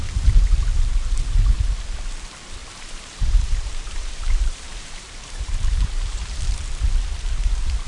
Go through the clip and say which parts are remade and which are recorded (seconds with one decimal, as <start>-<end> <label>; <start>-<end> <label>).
0.0-0.7 recorded; 0.7-1.8 remade; 1.8-2.6 recorded; 2.6-6.4 remade; 6.4-7.9 recorded